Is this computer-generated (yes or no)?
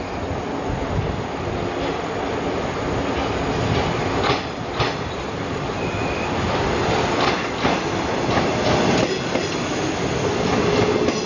no